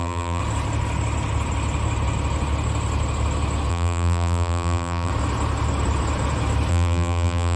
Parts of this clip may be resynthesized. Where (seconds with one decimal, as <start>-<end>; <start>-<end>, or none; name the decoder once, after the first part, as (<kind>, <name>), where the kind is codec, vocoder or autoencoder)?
0.0-0.4 (vocoder, BigVGAN v2); 3.7-5.1; 6.7-7.6